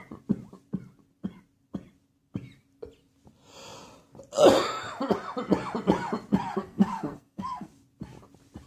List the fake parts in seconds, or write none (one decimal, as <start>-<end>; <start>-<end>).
6.5-7.7